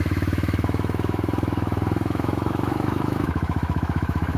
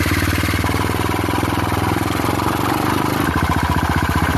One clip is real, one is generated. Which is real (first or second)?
second